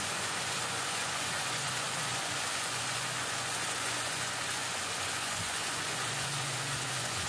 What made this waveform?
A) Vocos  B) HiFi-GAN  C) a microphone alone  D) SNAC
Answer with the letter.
A